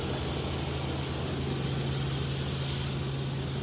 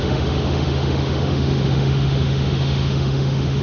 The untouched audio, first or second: first